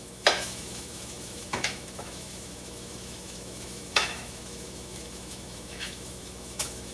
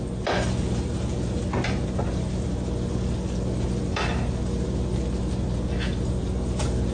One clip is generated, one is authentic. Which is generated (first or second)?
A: first